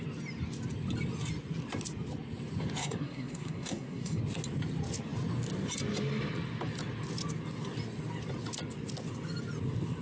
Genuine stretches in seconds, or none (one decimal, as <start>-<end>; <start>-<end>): 0.0-2.8; 4.2-10.0